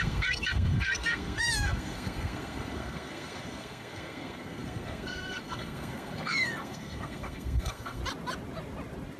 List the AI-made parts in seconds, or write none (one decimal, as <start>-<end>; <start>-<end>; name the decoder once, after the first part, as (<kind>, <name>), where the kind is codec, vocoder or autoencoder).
0.0-8.0 (codec, SNAC)